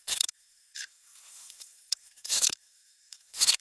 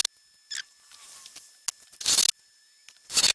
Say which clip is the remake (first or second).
first